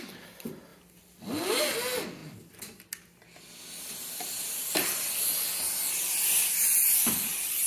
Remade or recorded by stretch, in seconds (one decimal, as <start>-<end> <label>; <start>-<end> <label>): 0.0-7.7 recorded